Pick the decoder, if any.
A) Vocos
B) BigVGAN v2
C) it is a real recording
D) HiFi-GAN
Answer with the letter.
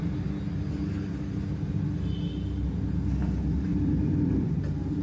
C